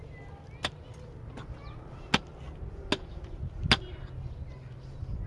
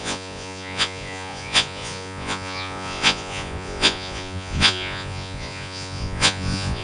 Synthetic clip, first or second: second